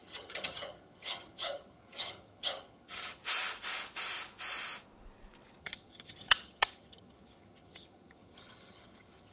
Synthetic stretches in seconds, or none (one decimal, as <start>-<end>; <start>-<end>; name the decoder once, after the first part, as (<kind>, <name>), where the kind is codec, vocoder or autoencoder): 0.0-3.2 (vocoder, HiFi-GAN); 5.6-9.3